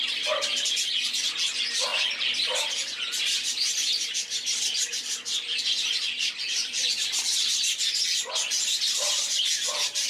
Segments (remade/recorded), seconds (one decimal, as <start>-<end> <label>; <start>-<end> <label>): 0.0-10.1 recorded